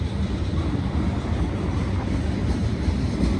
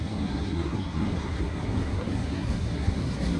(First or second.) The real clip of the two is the first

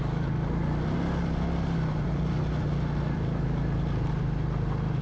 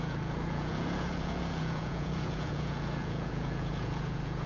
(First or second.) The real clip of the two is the first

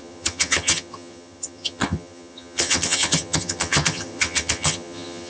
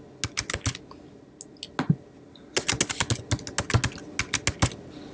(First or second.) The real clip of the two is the second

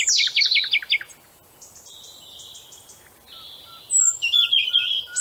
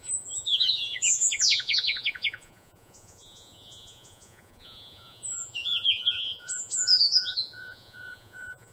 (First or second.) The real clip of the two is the first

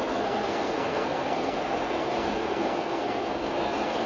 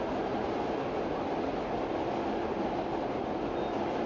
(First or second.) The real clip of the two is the second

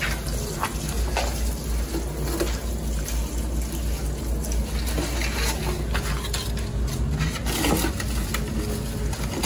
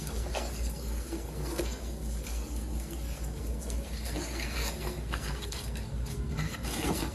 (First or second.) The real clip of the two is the first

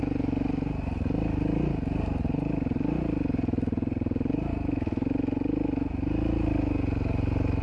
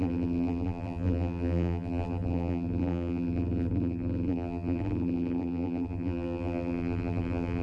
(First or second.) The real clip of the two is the first